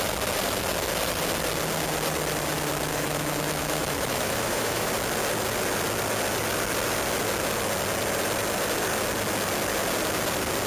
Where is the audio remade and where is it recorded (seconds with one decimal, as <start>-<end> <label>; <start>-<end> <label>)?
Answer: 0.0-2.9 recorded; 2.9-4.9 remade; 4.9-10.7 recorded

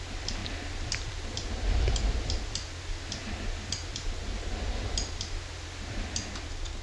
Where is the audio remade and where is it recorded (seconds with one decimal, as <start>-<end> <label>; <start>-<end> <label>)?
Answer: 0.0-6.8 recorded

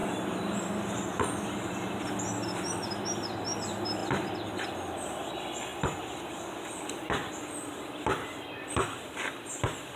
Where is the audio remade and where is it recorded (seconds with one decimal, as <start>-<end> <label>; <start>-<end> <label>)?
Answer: 0.0-5.7 remade; 5.7-6.3 recorded; 6.3-10.0 remade

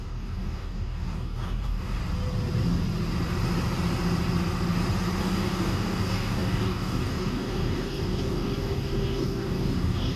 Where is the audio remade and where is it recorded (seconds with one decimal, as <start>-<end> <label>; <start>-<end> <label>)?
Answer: 0.0-2.0 remade; 2.0-5.2 recorded; 5.2-10.2 remade

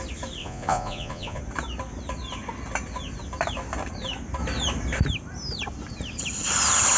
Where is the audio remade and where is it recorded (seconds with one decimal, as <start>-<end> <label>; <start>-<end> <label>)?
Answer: 0.0-0.4 recorded; 0.4-1.4 remade; 1.4-7.0 recorded

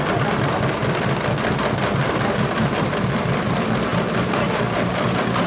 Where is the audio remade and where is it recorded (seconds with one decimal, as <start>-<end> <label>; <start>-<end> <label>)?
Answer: 0.0-5.5 recorded

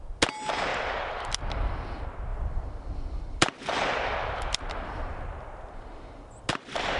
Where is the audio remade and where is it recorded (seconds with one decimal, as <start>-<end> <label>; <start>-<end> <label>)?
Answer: 0.0-0.7 recorded; 0.7-1.3 remade; 1.3-2.3 recorded; 2.3-6.5 remade; 6.5-7.0 recorded